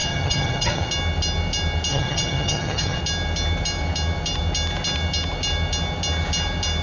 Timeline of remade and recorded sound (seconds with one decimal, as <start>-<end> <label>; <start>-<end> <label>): 0.0-0.9 remade; 0.9-1.9 recorded; 1.9-3.0 remade; 3.0-6.8 recorded